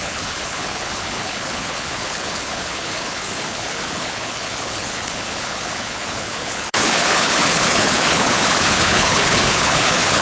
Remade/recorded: remade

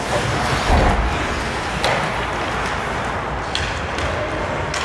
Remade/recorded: recorded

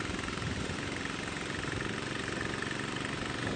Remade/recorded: remade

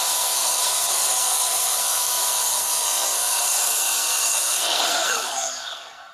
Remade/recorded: remade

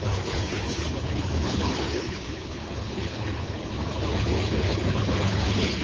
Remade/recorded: remade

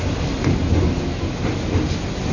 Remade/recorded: recorded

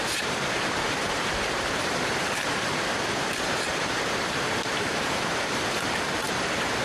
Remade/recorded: remade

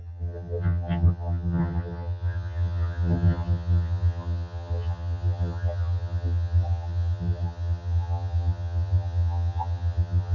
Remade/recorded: remade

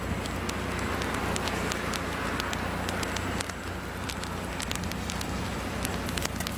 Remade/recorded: recorded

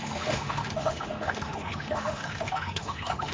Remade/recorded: remade